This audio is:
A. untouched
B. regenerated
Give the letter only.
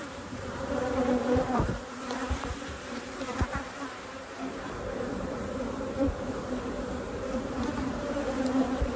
B